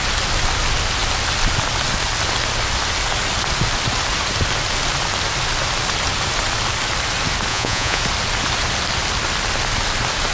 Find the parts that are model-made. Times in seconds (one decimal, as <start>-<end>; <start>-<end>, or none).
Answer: 7.5-8.0